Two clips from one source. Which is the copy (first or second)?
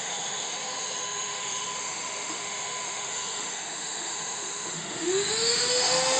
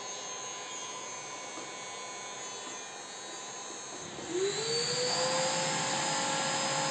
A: first